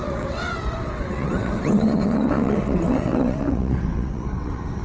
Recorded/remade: remade